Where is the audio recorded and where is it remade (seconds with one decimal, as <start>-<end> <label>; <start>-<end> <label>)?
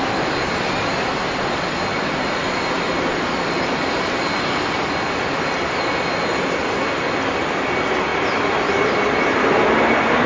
0.0-10.3 recorded